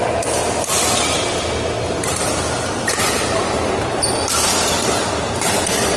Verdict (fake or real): real